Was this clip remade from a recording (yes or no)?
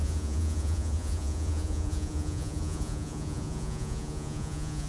yes